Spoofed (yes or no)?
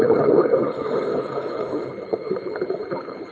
yes